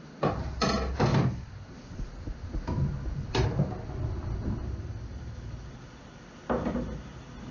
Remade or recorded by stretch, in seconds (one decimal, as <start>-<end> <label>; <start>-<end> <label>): 0.0-7.5 recorded